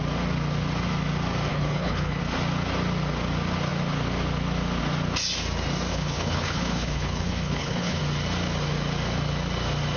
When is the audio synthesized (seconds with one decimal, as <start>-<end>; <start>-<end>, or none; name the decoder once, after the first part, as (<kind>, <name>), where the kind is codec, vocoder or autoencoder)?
1.5-2.2 (codec, HILCodec); 5.9-8.0